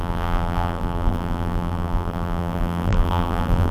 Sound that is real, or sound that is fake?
fake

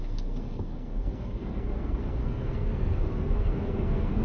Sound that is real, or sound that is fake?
fake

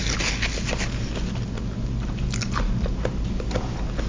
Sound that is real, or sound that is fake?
real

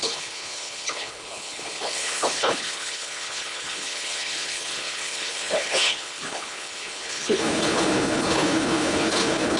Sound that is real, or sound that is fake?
fake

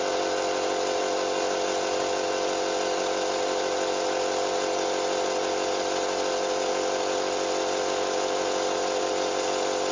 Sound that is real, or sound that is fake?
real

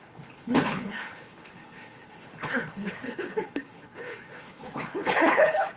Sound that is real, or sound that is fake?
fake